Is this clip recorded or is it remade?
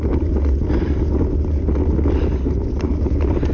recorded